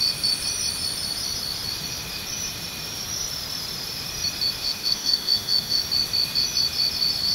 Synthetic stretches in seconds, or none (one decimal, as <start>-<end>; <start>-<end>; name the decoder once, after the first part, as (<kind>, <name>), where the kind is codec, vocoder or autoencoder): 4.6-5.8 (autoencoder, DAC-VAE)